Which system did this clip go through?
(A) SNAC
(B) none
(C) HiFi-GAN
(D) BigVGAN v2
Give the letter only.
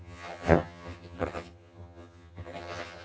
C